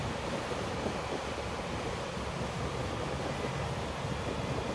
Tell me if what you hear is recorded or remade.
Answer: recorded